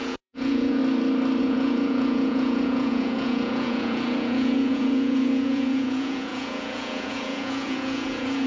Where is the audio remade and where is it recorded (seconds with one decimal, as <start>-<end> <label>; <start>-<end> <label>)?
0.0-0.8 remade; 0.8-1.4 recorded; 1.4-8.5 remade